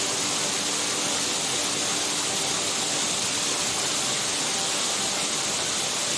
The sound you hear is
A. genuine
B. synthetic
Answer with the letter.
A